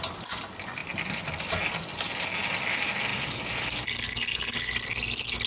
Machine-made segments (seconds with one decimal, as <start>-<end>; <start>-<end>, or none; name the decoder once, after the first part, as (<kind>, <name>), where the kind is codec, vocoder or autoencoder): 0.8-1.6 (vocoder, BigVGAN v2); 3.1-3.9